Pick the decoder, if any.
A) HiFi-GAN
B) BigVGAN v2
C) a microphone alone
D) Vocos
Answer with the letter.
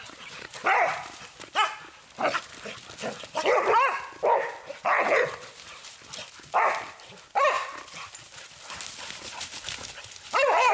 C